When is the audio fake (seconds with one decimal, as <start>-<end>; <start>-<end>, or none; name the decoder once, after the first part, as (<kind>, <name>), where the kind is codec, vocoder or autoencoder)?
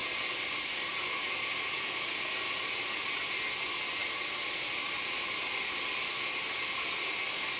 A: none